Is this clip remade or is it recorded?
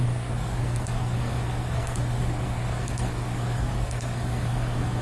remade